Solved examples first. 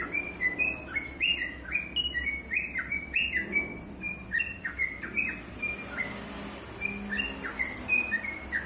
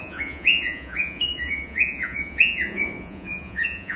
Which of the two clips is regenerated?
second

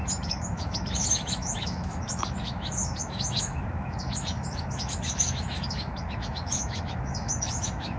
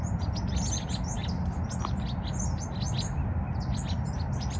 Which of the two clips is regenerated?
first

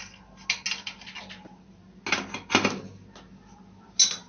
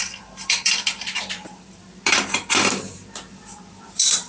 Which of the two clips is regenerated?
second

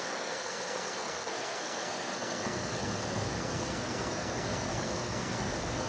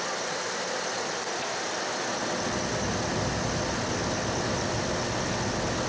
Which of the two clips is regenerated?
first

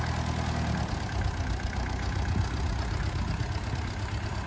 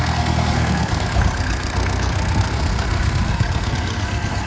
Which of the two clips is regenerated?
second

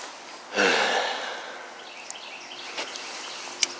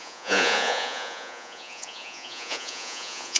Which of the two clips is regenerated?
second